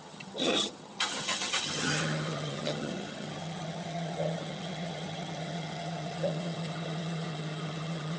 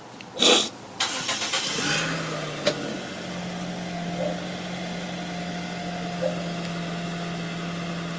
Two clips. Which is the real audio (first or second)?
second